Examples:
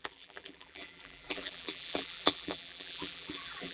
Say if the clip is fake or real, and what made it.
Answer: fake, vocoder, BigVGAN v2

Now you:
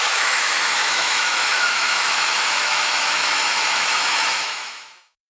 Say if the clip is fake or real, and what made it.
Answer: fake, autoencoder, DAC-VAE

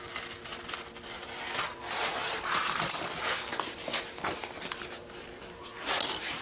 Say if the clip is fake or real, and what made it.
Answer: real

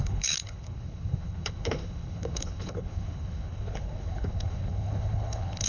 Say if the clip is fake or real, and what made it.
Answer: fake, codec, HILCodec